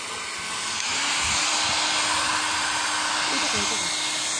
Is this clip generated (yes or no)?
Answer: no